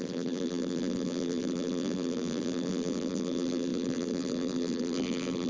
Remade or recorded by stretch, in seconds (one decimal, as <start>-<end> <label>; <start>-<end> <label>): 0.0-5.5 remade